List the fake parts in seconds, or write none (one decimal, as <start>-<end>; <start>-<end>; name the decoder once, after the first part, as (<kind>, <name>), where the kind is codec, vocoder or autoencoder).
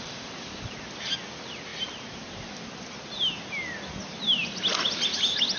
none